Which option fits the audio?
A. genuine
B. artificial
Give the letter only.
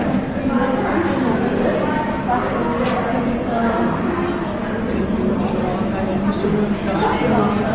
A